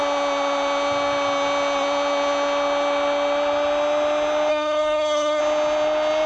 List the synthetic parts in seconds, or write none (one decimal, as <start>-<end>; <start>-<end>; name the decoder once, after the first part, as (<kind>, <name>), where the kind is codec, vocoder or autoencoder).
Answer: 4.5-5.4 (codec, SNAC)